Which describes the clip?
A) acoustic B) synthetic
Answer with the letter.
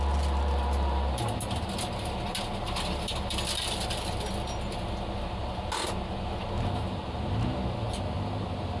A